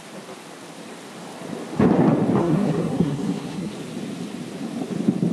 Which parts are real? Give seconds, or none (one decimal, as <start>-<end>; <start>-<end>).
0.0-2.4; 3.7-5.3